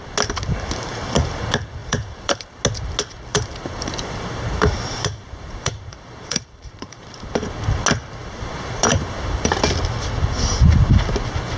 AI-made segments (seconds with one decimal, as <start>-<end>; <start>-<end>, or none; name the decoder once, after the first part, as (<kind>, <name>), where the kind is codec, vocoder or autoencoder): 1.8-2.6 (vocoder, BigVGAN v2); 3.3-7.3; 8.2-9.5